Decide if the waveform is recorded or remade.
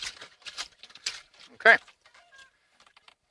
remade